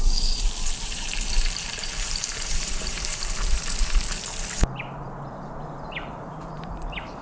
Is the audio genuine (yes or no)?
no